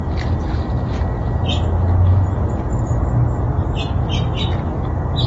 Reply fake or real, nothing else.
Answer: real